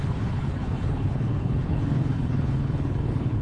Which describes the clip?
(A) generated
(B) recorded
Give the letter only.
A